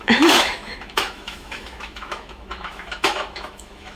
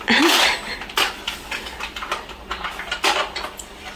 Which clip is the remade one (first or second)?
first